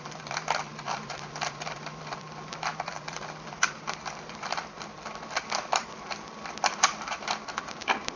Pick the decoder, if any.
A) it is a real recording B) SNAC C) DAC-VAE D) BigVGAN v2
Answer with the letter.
D